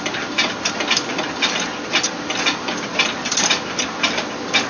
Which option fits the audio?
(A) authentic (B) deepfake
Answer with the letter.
A